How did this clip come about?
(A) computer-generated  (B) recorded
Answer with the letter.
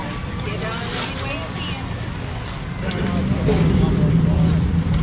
B